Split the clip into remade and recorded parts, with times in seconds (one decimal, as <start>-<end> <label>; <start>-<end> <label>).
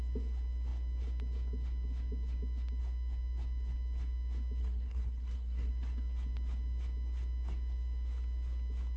0.0-4.6 recorded; 4.6-5.7 remade; 5.7-9.0 recorded